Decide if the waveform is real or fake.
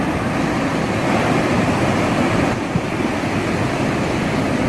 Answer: fake